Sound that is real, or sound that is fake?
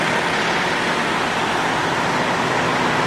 real